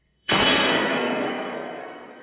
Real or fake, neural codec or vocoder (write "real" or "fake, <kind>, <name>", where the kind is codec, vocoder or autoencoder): fake, codec, SNAC